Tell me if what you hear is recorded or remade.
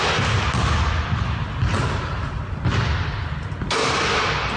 recorded